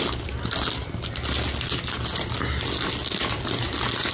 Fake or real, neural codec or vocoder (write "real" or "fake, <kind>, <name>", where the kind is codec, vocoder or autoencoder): real